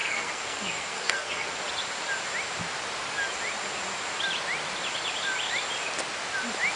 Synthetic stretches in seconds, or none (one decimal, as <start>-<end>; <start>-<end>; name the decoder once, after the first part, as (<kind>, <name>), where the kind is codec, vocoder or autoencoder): 0.0-1.5 (codec, SNAC)